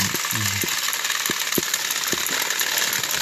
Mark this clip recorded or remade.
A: recorded